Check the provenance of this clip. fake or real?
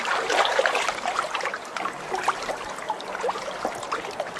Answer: real